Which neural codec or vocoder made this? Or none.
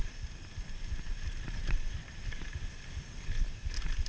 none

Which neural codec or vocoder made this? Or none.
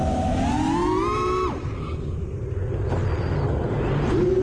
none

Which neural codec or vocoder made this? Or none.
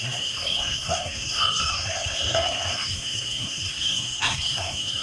codec, SNAC